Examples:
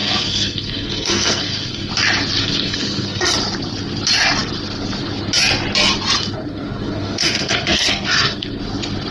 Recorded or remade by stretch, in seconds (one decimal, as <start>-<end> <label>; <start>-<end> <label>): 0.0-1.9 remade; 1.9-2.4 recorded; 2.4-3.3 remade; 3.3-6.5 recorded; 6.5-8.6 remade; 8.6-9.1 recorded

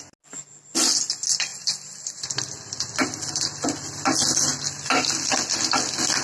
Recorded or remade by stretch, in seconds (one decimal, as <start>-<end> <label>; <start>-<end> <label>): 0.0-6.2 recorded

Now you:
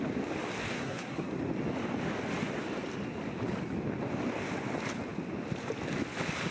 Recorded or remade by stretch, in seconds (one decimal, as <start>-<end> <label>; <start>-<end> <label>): 0.0-0.7 recorded; 0.7-1.3 remade; 1.3-6.5 recorded

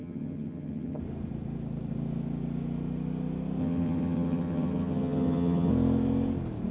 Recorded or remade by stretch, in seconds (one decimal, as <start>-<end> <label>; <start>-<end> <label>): 0.0-1.0 remade; 1.0-3.6 recorded; 3.6-5.7 remade; 5.7-6.7 recorded